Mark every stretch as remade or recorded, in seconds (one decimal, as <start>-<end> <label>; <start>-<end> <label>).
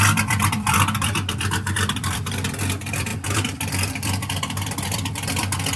0.0-5.8 remade